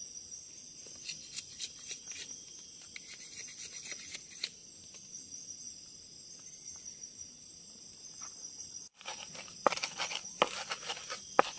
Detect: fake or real real